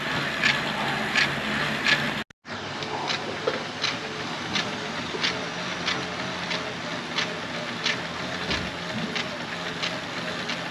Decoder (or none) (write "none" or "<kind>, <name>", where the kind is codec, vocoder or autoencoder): none